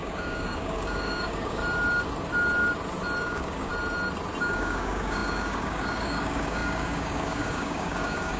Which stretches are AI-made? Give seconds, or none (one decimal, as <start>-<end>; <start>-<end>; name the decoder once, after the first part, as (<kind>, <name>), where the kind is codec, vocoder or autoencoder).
0.0-1.6 (codec, DAC); 3.2-3.7; 4.4-8.4